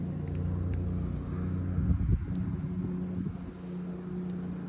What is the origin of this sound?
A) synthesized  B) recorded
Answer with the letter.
B